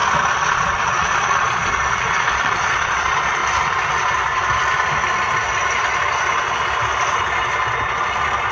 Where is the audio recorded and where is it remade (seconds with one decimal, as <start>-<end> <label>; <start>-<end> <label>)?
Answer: 0.0-0.5 recorded; 0.5-3.4 remade; 3.4-8.5 recorded

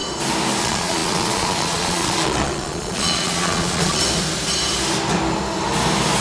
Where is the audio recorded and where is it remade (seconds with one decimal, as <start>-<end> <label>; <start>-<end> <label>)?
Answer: 0.0-0.6 recorded; 0.6-4.0 remade; 4.0-6.2 recorded

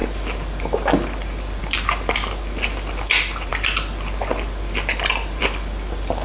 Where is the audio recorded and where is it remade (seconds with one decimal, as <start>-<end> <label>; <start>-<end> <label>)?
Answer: 0.0-6.2 recorded

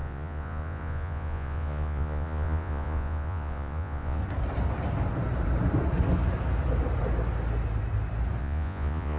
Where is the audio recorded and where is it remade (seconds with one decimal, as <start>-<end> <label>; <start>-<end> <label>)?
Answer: 0.0-4.2 remade; 4.2-8.4 recorded; 8.4-9.2 remade

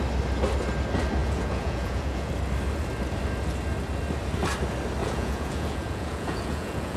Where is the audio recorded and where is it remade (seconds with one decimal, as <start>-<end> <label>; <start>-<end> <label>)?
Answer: 0.0-1.2 recorded; 1.2-2.3 remade; 2.3-5.0 recorded; 5.0-7.0 remade

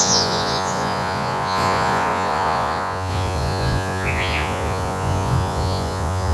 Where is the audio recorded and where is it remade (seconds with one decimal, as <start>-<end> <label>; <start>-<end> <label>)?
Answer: 0.0-6.3 remade

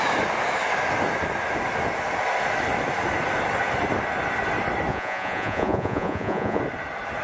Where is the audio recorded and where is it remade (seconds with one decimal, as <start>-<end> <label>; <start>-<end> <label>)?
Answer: 0.0-4.9 recorded; 4.9-6.6 remade; 6.6-7.2 recorded

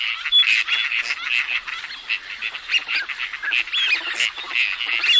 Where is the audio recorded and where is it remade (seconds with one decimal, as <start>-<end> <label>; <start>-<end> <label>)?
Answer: 0.0-5.2 recorded